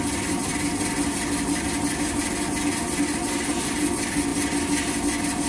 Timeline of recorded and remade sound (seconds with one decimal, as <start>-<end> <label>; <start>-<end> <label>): 0.0-5.5 recorded